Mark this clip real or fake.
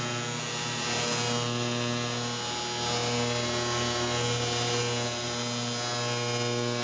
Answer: real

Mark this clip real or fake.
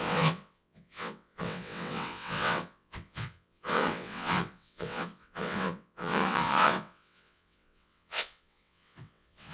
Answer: fake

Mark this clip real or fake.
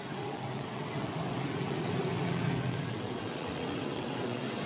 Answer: fake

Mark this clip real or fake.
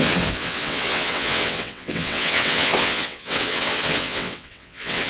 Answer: fake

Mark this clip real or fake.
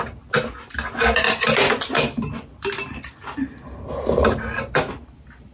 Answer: real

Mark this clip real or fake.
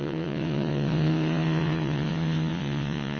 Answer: fake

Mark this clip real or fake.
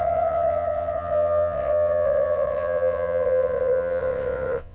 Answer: fake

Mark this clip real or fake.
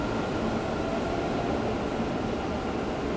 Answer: real